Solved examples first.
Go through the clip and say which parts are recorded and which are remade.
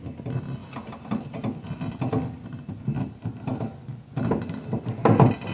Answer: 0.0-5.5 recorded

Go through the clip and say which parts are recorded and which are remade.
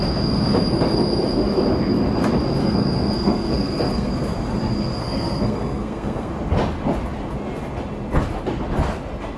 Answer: 0.0-2.6 recorded; 2.6-4.1 remade; 4.1-4.9 recorded; 4.9-6.3 remade; 6.3-9.4 recorded